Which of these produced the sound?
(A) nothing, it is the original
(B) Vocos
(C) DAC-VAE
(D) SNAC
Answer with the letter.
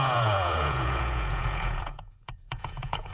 B